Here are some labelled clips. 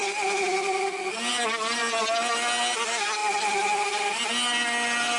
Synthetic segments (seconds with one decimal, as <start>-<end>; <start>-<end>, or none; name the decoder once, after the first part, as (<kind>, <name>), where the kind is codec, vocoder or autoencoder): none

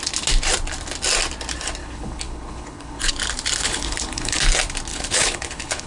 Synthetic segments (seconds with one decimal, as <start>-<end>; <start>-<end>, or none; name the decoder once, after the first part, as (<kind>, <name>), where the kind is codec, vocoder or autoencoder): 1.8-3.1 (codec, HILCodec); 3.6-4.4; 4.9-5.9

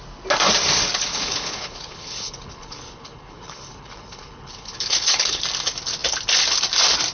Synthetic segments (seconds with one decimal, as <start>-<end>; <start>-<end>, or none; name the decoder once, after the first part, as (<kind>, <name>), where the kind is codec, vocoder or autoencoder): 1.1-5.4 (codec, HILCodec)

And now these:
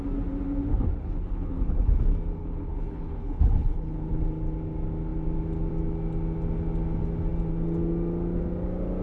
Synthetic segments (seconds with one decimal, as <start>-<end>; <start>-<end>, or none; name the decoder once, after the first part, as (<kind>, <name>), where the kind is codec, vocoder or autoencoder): 0.7-2.0 (codec, HILCodec); 2.4-4.1

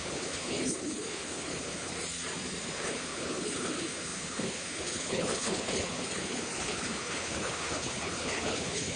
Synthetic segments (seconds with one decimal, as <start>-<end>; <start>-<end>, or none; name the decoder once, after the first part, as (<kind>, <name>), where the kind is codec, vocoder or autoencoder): 0.0-1.9 (codec, HILCodec); 2.6-9.0

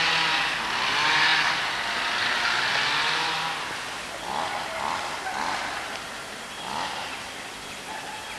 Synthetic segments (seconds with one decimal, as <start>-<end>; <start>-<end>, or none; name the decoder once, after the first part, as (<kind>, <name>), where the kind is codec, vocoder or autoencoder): none

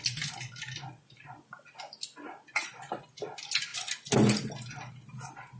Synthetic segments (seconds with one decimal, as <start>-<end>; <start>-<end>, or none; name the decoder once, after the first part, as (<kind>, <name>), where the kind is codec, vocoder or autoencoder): none

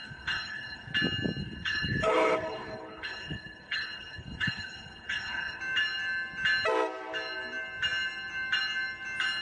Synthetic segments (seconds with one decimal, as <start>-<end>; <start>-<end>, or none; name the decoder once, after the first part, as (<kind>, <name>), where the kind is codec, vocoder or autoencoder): 0.0-0.9 (codec, HILCodec); 1.4-5.6